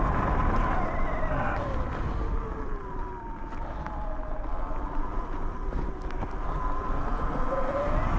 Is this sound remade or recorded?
recorded